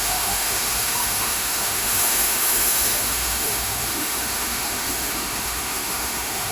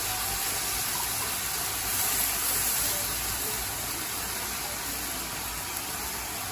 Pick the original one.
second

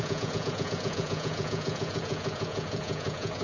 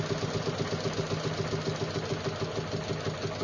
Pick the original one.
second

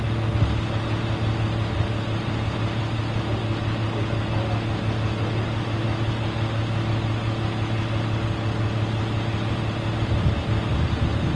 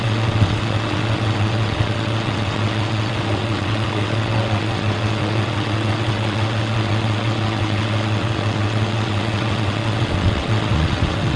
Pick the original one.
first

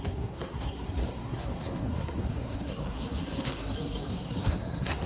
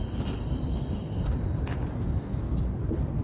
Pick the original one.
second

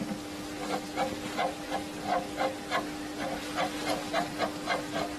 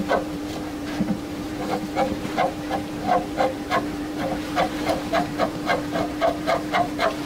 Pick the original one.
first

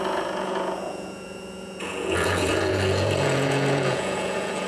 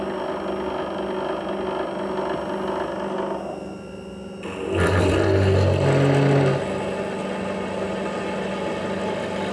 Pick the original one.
second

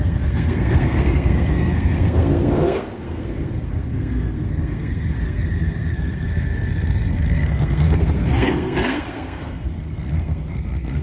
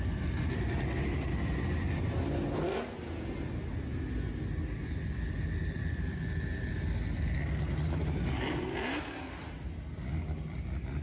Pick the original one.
second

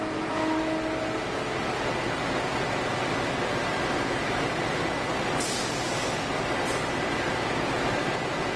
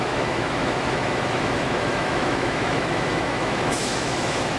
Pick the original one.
first